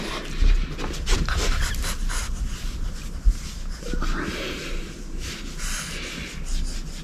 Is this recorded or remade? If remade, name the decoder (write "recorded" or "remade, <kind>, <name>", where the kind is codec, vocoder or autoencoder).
recorded